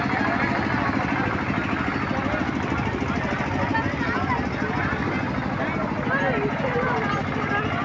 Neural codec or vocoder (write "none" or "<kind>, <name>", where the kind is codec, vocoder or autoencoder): none